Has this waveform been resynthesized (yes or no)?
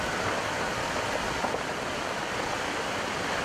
no